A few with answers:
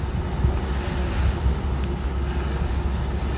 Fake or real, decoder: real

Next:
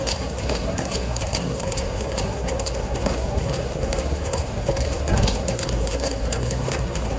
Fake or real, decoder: fake, codec, SNAC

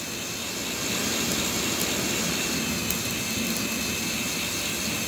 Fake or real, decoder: real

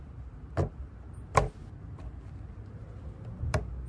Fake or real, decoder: real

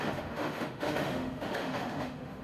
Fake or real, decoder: fake, autoencoder, DAC-VAE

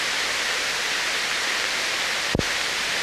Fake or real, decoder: real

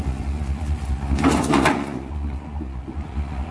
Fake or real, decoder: fake, vocoder, Vocos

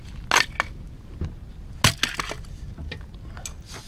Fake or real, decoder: real